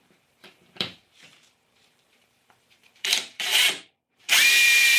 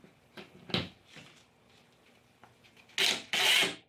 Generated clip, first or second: first